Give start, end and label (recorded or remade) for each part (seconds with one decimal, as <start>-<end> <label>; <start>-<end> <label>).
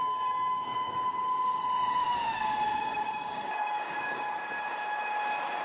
0.0-0.7 recorded; 0.7-1.6 remade; 1.6-2.0 recorded; 2.0-4.4 remade; 4.4-5.6 recorded